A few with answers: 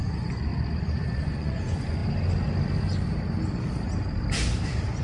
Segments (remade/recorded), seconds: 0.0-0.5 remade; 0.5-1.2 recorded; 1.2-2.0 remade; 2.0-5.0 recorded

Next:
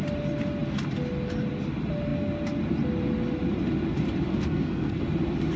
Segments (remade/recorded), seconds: 0.0-4.3 recorded; 4.3-5.0 remade; 5.0-5.6 recorded

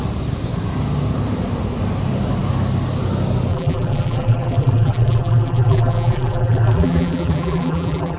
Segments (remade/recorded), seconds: 0.0-3.5 recorded; 3.5-8.2 remade

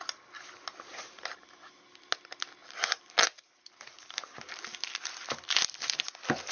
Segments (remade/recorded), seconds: 0.0-0.9 recorded; 0.9-1.9 remade; 1.9-6.5 recorded